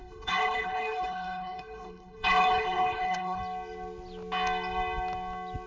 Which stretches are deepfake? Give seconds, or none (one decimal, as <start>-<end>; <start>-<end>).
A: 0.0-3.4